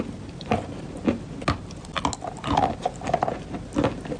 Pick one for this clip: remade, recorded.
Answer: recorded